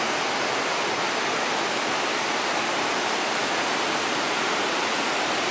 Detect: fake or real real